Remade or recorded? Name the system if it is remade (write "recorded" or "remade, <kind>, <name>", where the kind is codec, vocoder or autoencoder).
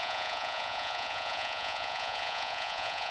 remade, vocoder, Vocos